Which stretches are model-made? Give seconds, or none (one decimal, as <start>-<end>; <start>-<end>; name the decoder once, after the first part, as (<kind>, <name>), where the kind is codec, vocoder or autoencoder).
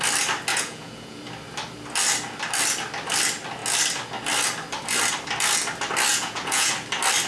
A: 0.5-1.2 (vocoder, Vocos); 6.1-6.7